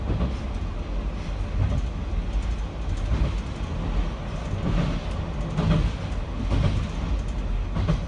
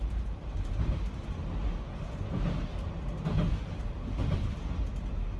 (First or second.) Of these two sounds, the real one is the first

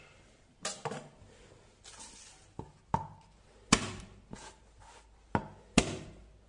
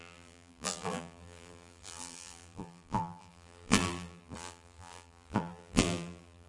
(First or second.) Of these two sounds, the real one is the first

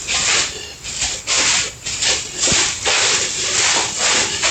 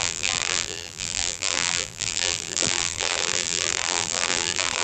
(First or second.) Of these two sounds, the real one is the first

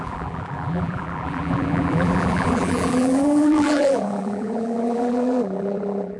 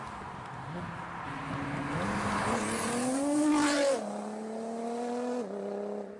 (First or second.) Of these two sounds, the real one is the second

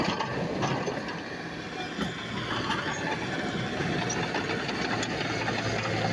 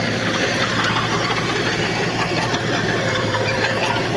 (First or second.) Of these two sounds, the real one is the first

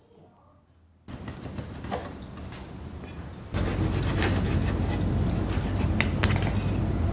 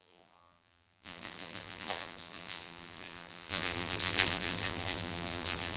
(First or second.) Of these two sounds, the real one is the first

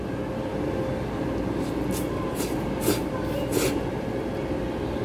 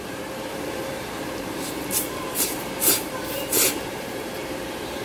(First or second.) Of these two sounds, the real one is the first